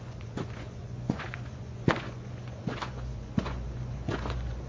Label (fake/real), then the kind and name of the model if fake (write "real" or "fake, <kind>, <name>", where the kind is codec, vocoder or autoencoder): fake, vocoder, Vocos